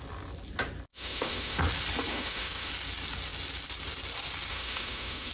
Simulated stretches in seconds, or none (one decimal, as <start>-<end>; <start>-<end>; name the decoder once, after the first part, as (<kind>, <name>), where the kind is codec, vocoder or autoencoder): 0.9-1.6 (autoencoder, DAC-VAE); 2.1-2.7; 4.5-5.3